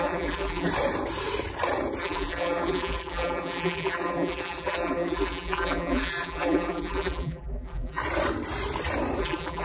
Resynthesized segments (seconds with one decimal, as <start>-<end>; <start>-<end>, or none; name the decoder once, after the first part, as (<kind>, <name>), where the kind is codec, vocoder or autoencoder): 0.0-0.7 (vocoder, BigVGAN v2); 2.0-8.0; 9.2-9.6